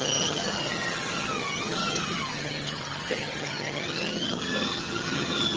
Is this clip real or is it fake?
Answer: fake